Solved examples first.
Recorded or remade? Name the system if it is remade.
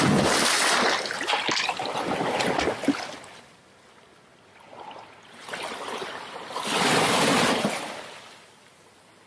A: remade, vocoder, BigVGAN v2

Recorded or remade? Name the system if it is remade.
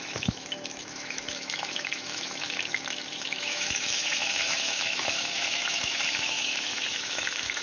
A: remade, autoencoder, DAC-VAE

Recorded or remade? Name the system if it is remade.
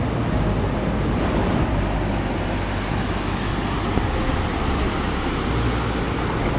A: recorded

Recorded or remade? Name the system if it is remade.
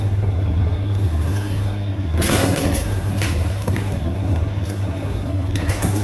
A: remade, codec, SNAC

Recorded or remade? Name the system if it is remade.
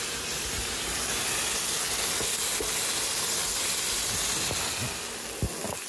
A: recorded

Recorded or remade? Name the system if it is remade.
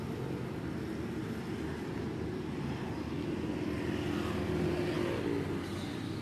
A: recorded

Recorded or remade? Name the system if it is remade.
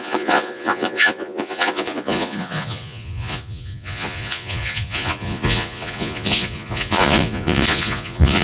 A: remade, vocoder, Vocos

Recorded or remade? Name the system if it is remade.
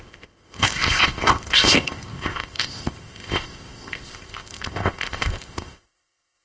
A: remade, codec, ZipCodec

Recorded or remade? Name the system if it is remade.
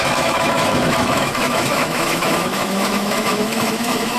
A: remade, autoencoder, DAC-VAE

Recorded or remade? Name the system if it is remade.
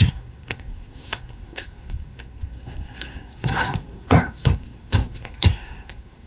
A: remade, codec, SNAC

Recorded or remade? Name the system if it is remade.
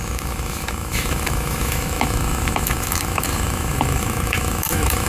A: remade, autoencoder, DAC-VAE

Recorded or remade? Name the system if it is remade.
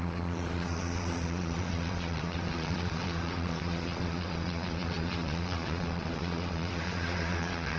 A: remade, vocoder, Vocos